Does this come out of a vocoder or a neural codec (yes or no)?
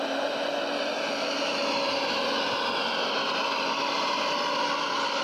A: no